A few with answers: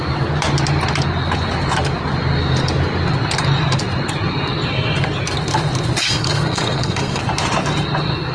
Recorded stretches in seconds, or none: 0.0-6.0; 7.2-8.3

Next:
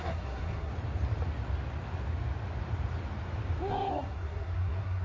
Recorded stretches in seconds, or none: 0.7-3.7

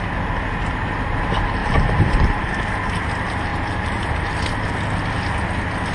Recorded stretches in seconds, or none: 0.0-1.6; 2.6-3.5; 4.7-5.9

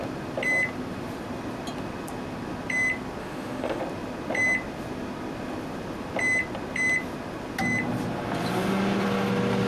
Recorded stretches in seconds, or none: 0.0-3.2; 3.8-9.7

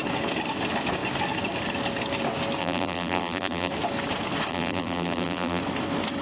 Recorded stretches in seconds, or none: 0.0-2.6; 3.7-4.5; 5.6-6.2

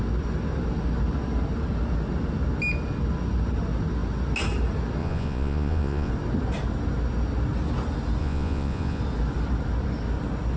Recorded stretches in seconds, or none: 0.0-5.0; 6.1-8.2; 9.0-10.6

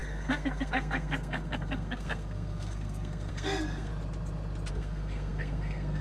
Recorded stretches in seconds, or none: 3.9-4.7